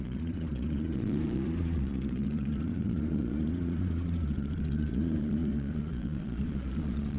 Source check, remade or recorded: remade